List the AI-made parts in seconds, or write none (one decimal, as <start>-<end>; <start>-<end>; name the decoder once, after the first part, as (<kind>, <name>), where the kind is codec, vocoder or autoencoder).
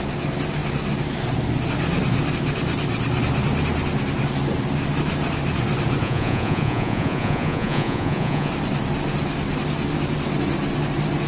6.0-8.5 (vocoder, Vocos)